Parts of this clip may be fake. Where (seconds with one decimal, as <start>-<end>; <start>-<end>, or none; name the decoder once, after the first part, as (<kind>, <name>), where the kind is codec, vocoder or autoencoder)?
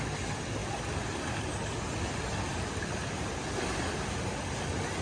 none